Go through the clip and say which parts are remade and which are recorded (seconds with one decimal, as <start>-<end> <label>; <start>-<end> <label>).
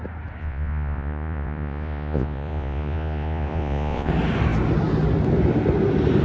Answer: 0.0-0.4 recorded; 0.4-4.1 remade; 4.1-6.2 recorded